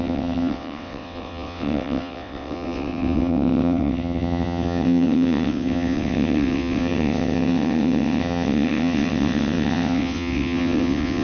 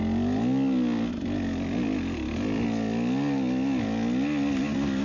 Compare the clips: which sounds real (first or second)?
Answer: second